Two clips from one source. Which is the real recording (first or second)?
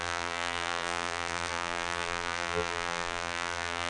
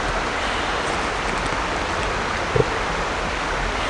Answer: second